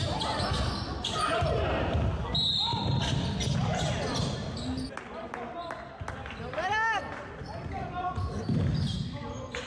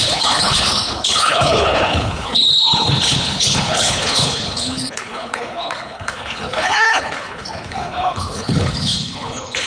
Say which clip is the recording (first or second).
first